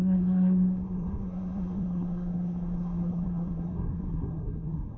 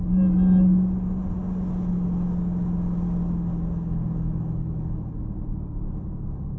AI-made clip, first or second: first